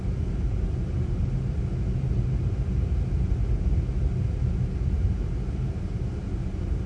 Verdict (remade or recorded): recorded